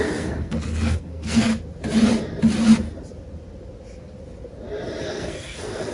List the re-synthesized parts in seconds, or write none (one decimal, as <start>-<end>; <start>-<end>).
0.0-1.5; 5.0-5.9